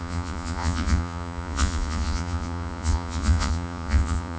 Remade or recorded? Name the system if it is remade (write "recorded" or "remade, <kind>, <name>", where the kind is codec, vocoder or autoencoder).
remade, vocoder, Vocos